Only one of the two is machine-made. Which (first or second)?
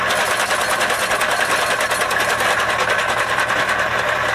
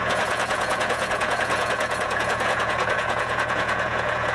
second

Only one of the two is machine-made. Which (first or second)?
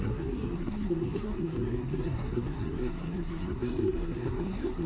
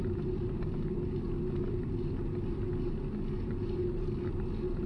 first